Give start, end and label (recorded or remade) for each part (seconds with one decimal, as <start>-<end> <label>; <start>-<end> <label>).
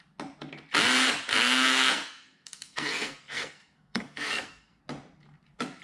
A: 0.0-1.3 recorded; 1.3-4.8 remade; 4.8-5.8 recorded